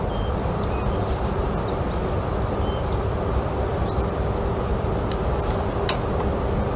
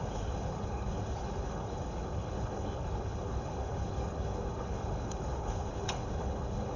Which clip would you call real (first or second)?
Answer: first